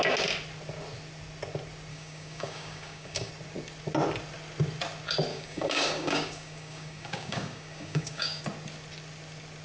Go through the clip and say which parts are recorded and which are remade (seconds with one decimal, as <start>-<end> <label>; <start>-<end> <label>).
0.0-1.9 recorded; 1.9-3.3 remade; 3.3-5.3 recorded; 5.3-8.4 remade; 8.4-9.6 recorded